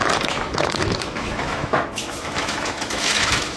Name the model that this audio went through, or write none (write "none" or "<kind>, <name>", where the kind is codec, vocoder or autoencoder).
autoencoder, DAC-VAE